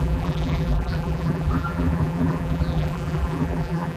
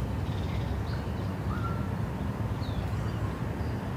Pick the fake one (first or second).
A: first